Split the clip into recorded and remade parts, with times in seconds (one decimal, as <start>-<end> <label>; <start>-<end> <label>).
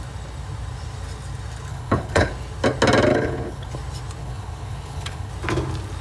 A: 0.0-1.7 recorded; 1.7-2.3 remade; 2.3-3.1 recorded; 3.1-3.7 remade; 3.7-4.2 recorded; 4.2-5.3 remade; 5.3-6.0 recorded